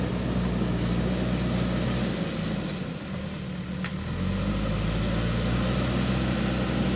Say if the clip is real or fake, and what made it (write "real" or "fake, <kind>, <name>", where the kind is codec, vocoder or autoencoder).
real